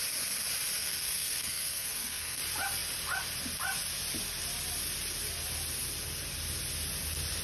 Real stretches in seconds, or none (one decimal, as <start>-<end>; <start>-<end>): 0.0-0.8; 2.4-7.4